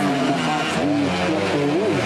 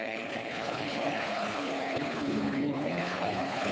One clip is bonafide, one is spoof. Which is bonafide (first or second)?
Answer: first